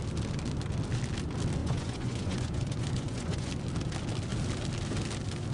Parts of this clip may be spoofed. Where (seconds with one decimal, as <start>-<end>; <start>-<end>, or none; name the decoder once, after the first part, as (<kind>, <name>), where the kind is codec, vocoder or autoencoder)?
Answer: 1.6-3.5 (vocoder, Vocos)

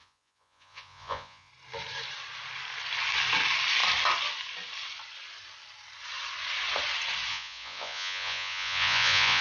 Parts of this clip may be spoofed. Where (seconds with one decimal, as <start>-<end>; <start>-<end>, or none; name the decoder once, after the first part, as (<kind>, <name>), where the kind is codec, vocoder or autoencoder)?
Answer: 0.0-1.5 (vocoder, Vocos); 7.3-9.4